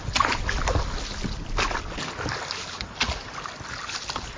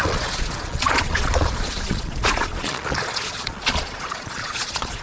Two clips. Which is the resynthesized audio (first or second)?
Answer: second